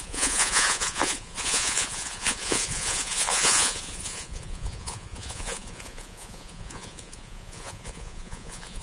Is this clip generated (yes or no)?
yes